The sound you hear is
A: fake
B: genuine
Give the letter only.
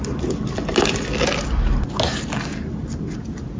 B